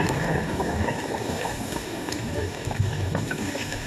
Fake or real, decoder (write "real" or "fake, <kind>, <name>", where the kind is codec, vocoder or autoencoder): fake, codec, DAC